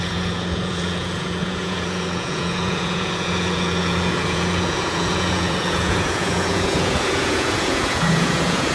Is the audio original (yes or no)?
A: no